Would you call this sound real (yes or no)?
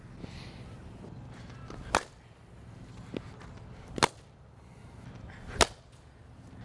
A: yes